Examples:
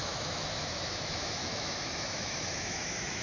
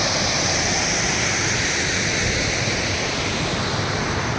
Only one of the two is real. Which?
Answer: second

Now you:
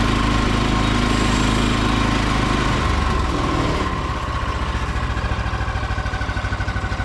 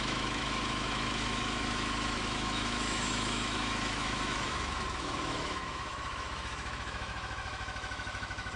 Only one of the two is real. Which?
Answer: first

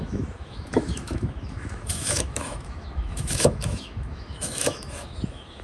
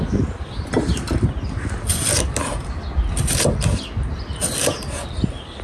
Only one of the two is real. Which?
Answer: second